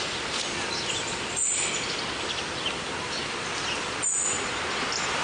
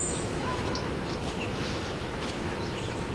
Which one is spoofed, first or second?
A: second